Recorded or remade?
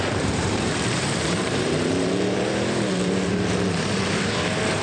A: remade